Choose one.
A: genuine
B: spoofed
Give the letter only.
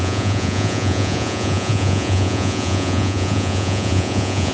B